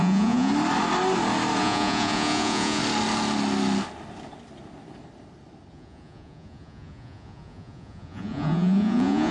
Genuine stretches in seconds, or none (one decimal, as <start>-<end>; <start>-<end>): 0.5-1.6; 2.8-5.7